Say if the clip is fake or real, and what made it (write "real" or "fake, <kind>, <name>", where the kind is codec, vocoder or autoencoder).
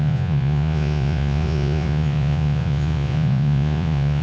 fake, vocoder, Vocos